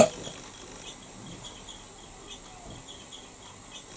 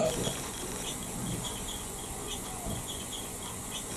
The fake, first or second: second